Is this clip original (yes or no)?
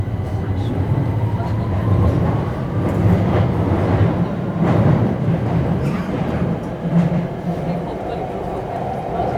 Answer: yes